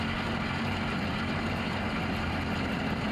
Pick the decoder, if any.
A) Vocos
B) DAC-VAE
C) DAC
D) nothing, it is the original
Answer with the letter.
D